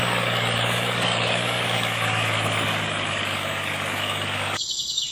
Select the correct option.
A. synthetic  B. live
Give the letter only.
A